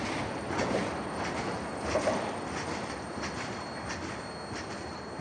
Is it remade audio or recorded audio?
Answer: recorded